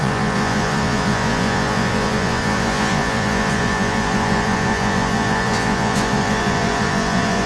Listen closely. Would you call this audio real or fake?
fake